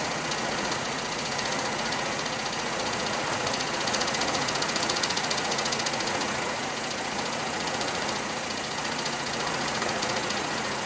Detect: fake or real fake